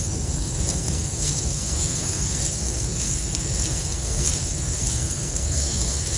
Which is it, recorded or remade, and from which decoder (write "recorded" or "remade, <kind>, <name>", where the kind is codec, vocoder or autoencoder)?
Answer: remade, codec, SNAC